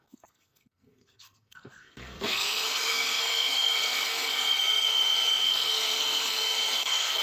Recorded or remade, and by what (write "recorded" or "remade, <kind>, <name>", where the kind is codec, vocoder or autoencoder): remade, codec, SNAC